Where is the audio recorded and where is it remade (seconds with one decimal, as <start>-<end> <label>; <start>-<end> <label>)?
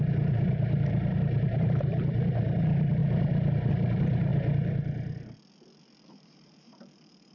0.0-3.0 remade; 3.0-3.7 recorded; 3.7-4.3 remade; 4.3-6.1 recorded; 6.1-7.3 remade